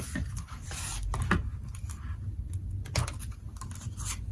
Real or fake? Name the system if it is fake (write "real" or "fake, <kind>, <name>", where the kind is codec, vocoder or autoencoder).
real